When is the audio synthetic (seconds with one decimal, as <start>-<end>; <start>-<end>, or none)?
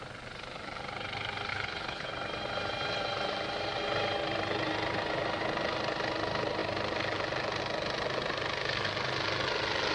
1.5-2.1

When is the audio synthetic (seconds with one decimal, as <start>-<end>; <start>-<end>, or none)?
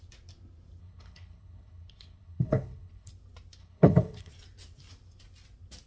0.8-3.1; 3.6-4.3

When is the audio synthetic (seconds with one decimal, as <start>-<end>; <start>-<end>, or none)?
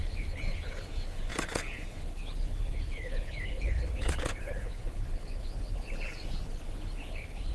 0.0-7.5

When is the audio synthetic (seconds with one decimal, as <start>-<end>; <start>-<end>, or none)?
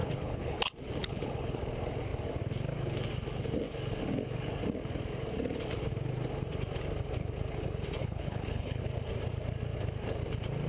0.0-0.6; 1.0-1.6; 8.0-8.8